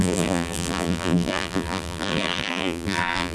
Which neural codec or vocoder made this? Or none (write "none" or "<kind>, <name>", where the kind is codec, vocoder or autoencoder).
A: vocoder, BigVGAN v2